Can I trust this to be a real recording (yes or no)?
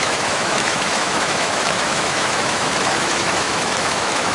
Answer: no